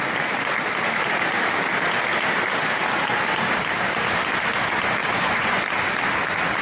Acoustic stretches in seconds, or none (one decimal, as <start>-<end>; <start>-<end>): 0.0-5.0; 5.6-6.6